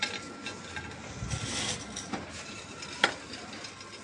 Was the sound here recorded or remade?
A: recorded